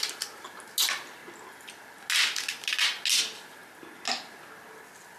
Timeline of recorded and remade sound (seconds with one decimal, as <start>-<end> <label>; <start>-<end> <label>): 0.0-5.2 recorded

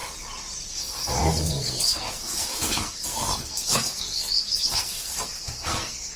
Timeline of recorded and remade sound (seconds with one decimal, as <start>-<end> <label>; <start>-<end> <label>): 0.0-0.7 recorded; 0.7-6.2 remade